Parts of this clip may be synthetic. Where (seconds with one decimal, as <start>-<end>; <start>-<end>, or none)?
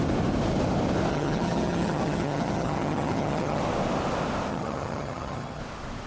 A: 1.1-3.6; 4.5-5.6